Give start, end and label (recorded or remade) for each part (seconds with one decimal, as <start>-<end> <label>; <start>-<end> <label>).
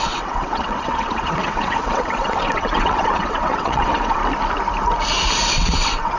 0.0-4.2 remade; 4.2-5.5 recorded; 5.5-6.2 remade